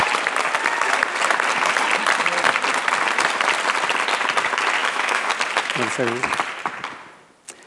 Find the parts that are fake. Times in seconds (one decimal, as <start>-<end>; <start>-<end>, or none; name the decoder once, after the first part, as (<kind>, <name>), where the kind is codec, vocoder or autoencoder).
4.8-5.3 (autoencoder, DAC-VAE)